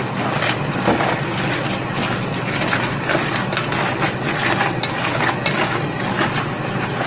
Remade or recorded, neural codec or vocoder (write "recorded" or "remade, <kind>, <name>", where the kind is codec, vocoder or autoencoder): recorded